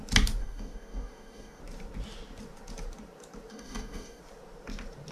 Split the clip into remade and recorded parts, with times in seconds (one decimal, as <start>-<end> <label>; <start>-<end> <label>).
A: 0.0-0.4 recorded; 0.4-1.6 remade; 1.6-3.5 recorded; 3.5-4.2 remade; 4.2-5.1 recorded